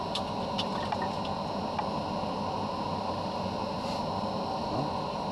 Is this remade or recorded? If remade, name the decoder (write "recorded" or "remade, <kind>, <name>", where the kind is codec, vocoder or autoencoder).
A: recorded